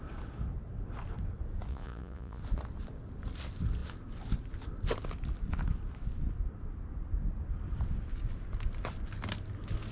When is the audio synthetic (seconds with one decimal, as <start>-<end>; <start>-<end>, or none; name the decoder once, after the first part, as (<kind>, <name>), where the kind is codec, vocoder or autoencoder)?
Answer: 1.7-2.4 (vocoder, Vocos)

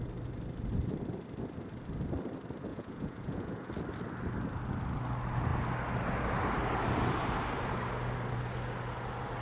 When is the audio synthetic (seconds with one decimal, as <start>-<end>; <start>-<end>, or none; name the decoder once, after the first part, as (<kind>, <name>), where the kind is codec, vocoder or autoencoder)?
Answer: 2.7-3.7 (vocoder, Vocos)

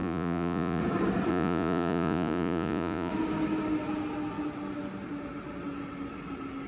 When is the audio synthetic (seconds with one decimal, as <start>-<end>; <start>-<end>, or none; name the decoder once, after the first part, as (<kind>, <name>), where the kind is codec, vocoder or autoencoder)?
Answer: 0.0-0.8 (vocoder, Vocos); 1.3-3.1

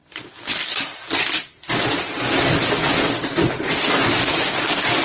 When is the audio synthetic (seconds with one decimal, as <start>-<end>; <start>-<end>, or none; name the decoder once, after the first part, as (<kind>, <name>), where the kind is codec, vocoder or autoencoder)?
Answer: none

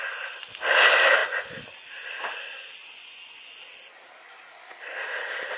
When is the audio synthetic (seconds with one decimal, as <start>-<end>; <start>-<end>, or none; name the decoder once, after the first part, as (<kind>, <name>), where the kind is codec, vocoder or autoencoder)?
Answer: 2.8-3.6 (vocoder, Vocos)

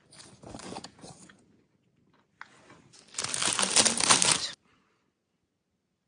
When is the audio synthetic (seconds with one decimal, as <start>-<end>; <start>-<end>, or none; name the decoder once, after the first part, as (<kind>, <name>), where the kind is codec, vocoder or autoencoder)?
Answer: 0.6-1.4 (vocoder, Vocos)

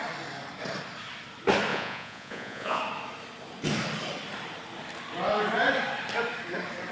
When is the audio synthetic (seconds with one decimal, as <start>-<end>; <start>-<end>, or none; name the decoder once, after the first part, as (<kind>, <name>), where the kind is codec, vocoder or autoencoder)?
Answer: 1.7-2.8 (vocoder, Vocos)

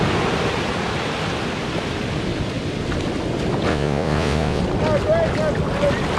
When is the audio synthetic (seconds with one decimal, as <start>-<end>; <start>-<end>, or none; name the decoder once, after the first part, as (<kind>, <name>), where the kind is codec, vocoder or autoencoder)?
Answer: 3.7-4.6 (vocoder, Vocos)